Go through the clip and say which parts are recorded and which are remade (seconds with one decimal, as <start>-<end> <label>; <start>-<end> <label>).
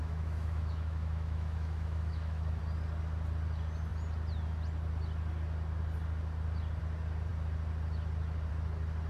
0.0-2.6 remade; 2.6-9.1 recorded